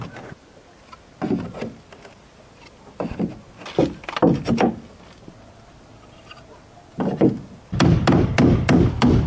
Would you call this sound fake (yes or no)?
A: no